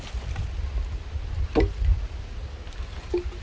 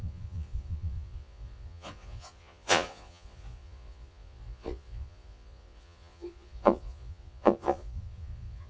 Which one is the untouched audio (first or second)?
first